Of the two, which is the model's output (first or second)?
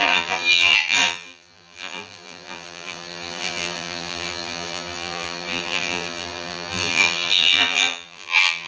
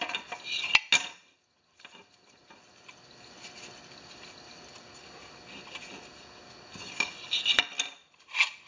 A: first